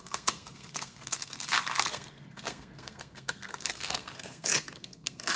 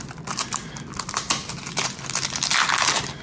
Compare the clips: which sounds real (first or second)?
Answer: second